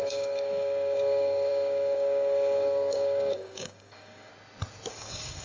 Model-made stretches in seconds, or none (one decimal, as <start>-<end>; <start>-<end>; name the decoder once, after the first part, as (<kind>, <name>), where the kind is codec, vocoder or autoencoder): 0.0-4.3 (codec, DAC); 4.9-5.4